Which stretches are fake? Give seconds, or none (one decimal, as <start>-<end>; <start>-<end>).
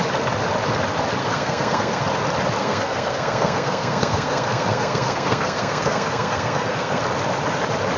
1.2-2.0; 2.6-7.0